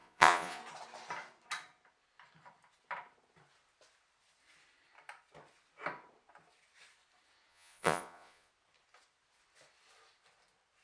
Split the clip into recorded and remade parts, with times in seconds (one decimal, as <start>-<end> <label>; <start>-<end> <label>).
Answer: 0.0-0.6 remade; 0.6-7.5 recorded; 7.5-8.5 remade; 8.5-10.8 recorded